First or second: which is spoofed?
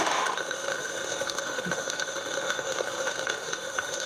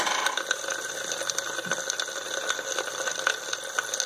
first